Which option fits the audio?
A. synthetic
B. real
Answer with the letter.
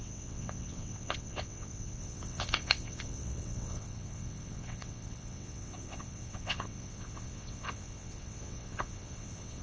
A